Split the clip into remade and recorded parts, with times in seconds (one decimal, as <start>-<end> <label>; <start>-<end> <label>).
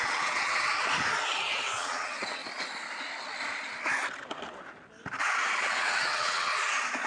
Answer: 0.0-0.7 remade; 0.7-1.4 recorded; 1.4-2.4 remade; 2.4-5.6 recorded; 5.6-6.5 remade; 6.5-7.1 recorded